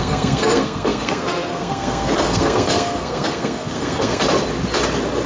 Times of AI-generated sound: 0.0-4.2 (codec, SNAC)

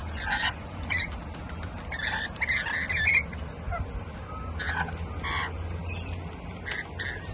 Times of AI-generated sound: 0.0-1.0 (vocoder, Vocos)